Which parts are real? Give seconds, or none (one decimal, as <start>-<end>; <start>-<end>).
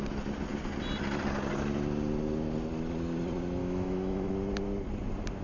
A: 0.0-3.6; 4.3-5.4